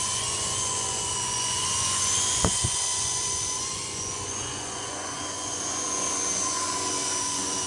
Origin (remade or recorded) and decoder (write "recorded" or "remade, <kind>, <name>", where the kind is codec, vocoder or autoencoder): remade, vocoder, Vocos